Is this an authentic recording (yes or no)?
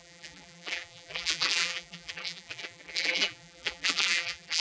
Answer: no